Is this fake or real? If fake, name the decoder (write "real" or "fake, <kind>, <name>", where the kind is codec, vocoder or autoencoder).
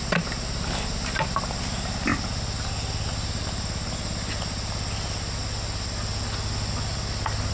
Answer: real